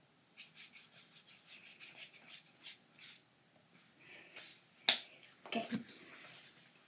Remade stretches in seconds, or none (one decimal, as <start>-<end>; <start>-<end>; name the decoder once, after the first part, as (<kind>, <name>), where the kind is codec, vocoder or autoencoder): none